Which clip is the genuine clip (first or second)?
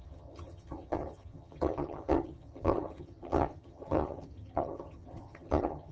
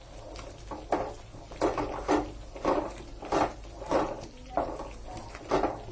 second